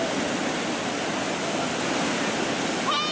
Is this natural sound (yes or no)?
yes